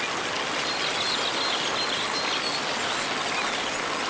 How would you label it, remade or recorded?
recorded